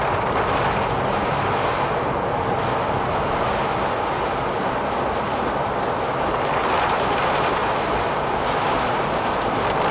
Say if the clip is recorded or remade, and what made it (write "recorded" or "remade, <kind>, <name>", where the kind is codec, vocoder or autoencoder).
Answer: recorded